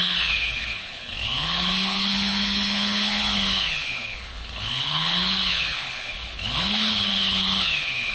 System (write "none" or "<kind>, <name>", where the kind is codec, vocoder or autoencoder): codec, HILCodec